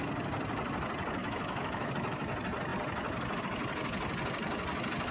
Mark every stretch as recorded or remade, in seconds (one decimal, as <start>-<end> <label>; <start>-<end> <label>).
0.0-1.2 recorded; 1.2-1.9 remade; 1.9-5.1 recorded